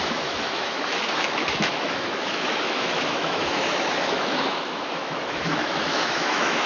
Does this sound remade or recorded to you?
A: remade